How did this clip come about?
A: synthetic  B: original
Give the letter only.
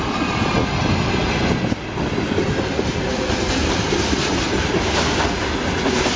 B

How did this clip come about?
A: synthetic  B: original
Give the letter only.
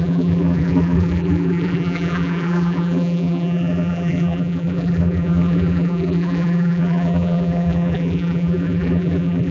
A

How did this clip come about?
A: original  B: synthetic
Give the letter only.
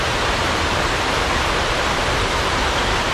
B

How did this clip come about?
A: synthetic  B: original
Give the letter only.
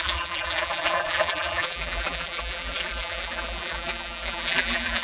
A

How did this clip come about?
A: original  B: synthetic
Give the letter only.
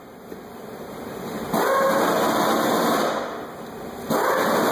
B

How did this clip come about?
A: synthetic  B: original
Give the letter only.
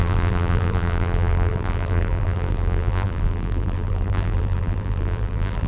A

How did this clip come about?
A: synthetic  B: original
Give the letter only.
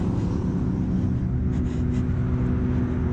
B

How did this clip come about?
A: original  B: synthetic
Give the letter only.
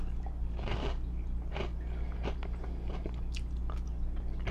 A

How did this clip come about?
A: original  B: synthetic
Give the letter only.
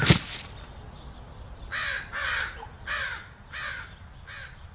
A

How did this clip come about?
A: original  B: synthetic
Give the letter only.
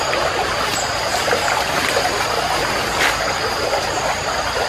A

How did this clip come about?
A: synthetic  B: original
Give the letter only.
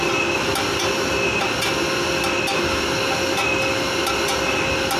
B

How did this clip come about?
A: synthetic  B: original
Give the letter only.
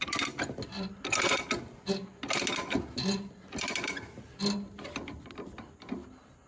B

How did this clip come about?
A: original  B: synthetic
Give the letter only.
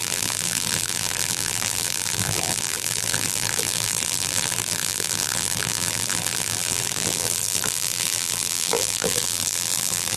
B